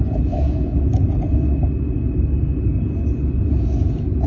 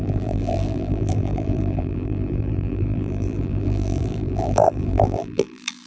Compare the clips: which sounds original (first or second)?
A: first